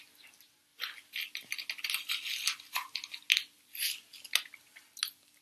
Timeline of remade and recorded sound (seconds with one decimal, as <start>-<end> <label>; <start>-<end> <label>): 0.0-5.4 recorded